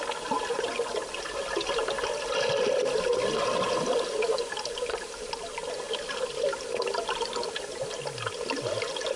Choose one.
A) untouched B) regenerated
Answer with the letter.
A